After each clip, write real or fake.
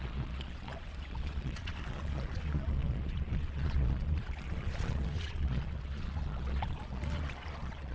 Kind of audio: fake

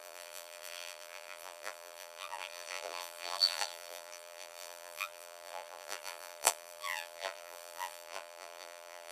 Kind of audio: fake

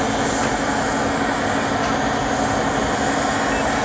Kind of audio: real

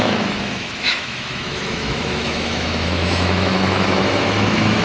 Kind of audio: fake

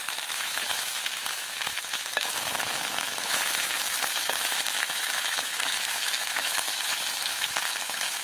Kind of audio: fake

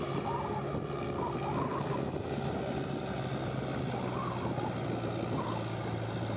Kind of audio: real